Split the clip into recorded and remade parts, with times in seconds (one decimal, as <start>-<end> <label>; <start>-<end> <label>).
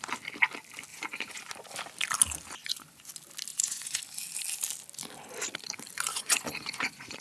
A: 0.0-0.9 recorded; 0.9-1.5 remade; 1.5-2.6 recorded; 2.6-3.1 remade; 3.1-3.5 recorded; 3.5-4.0 remade; 4.0-6.1 recorded; 6.1-7.2 remade